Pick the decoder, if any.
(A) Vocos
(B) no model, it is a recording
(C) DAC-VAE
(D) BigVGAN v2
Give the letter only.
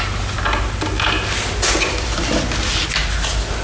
B